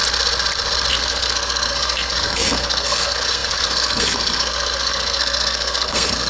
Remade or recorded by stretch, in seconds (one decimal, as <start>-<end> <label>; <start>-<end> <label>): 0.0-0.9 recorded; 0.9-6.3 remade